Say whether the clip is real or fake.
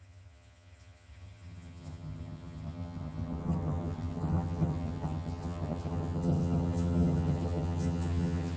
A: fake